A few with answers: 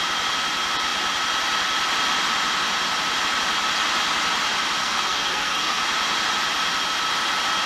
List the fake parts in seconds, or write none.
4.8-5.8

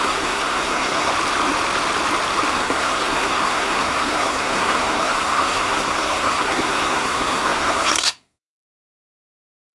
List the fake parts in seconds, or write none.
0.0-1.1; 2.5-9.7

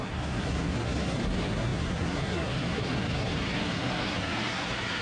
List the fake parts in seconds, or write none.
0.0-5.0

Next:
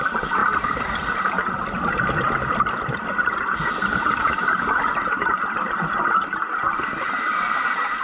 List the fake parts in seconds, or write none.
none